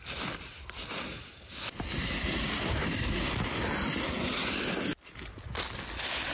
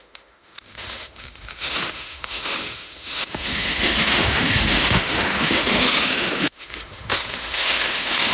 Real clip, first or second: first